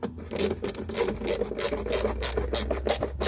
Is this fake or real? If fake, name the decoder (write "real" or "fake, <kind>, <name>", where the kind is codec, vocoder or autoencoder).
real